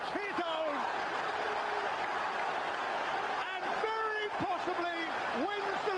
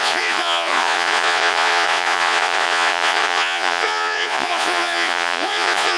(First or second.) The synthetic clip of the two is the second